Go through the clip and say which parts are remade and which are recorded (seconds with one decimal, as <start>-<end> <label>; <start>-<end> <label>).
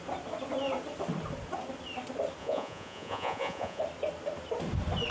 0.0-2.4 recorded; 2.4-3.8 remade; 3.8-5.1 recorded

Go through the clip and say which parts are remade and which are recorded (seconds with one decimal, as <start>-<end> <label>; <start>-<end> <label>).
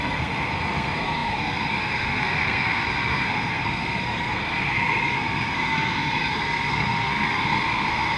0.0-8.2 remade